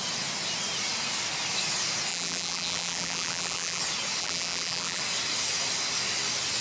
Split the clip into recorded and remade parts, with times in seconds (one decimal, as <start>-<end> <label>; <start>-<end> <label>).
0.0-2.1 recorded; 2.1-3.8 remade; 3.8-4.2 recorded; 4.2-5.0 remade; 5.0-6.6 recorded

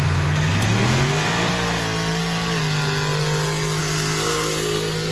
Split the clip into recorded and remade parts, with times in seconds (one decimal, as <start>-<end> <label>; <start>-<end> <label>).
0.0-1.8 remade; 1.8-3.8 recorded; 3.8-5.1 remade

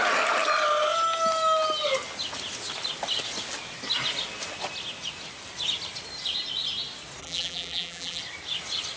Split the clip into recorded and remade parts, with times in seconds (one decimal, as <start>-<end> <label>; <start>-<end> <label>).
0.0-7.2 recorded; 7.2-8.2 remade; 8.2-9.0 recorded